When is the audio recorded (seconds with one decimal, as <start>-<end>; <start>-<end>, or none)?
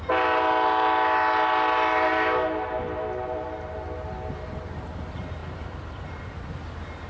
0.0-5.4; 6.2-7.1